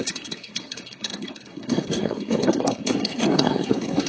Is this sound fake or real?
fake